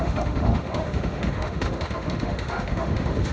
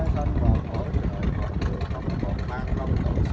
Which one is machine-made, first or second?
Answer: first